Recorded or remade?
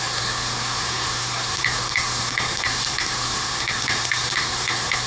remade